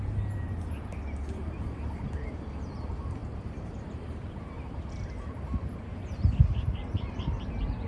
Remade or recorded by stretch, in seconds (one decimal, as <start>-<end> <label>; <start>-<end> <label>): 0.0-3.2 recorded; 3.2-7.5 remade; 7.5-7.9 recorded